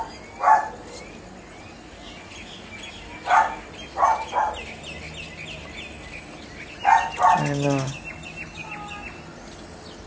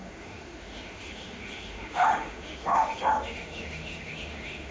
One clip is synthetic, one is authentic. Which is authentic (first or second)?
first